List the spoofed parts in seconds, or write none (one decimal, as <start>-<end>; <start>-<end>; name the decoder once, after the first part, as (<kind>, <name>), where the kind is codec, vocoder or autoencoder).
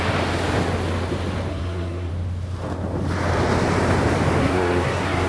1.5-2.1 (codec, SNAC); 4.4-5.3